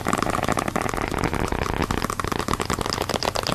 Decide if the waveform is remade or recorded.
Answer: recorded